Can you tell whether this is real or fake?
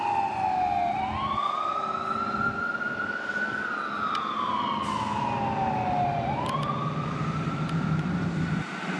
real